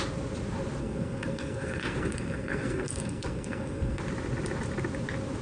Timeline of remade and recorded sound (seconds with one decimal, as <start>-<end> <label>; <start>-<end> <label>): 0.0-0.8 recorded; 0.8-4.0 remade; 4.0-5.4 recorded